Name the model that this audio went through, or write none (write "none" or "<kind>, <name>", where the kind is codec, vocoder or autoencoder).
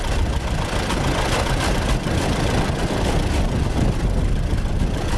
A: none